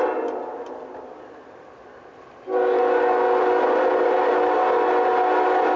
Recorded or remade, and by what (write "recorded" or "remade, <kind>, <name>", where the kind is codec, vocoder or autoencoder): recorded